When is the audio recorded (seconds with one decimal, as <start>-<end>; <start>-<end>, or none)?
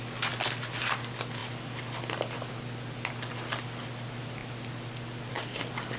0.0-6.0